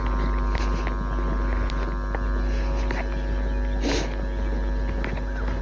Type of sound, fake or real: real